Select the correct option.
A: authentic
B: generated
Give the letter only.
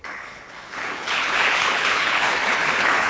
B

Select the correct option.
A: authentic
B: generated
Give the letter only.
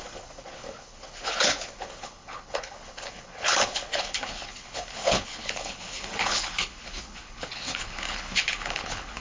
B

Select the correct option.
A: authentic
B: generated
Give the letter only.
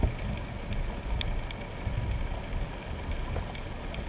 A